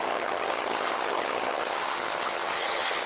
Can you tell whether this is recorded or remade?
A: remade